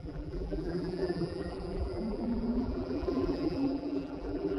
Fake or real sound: fake